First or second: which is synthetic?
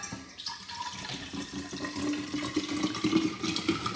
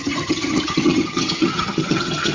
second